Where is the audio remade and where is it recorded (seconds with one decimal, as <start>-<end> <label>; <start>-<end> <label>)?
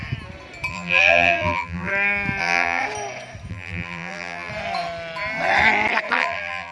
0.0-0.7 recorded; 0.7-1.9 remade; 1.9-2.4 recorded; 2.4-2.8 remade; 2.8-3.5 recorded; 3.5-4.5 remade; 4.5-6.1 recorded; 6.1-6.7 remade